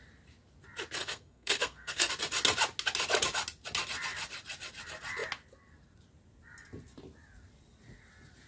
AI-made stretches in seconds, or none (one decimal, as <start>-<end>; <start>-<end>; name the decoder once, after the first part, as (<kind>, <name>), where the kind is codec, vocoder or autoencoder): 1.0-2.1 (codec, SNAC)